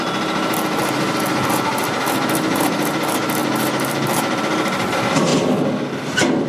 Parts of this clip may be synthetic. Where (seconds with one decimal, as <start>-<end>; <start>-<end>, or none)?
3.4-4.4